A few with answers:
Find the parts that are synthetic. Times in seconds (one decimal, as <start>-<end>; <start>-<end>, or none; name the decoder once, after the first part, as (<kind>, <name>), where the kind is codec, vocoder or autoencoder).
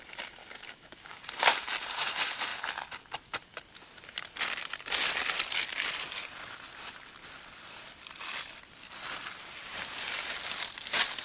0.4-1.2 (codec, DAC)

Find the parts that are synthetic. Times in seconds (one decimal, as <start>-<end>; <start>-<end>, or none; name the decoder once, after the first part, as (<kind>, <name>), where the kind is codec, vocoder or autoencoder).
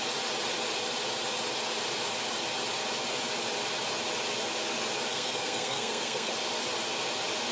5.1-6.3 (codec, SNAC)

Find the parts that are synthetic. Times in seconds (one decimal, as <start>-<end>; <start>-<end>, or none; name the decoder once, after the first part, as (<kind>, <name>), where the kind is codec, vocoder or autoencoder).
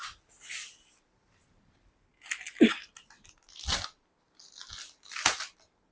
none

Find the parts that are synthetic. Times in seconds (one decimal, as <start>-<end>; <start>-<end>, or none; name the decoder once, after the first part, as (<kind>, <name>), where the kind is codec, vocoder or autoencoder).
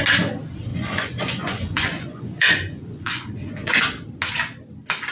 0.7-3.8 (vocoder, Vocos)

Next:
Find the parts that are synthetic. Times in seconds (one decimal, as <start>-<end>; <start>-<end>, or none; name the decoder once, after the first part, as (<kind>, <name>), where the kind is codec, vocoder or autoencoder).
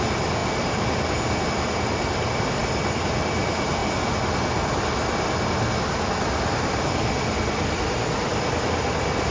none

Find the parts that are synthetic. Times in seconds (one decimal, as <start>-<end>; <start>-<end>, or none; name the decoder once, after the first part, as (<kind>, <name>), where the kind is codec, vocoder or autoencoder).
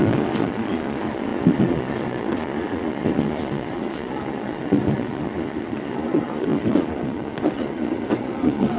0.0-8.8 (vocoder, Vocos)